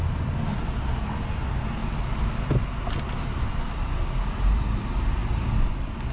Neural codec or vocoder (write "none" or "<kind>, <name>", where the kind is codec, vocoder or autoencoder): none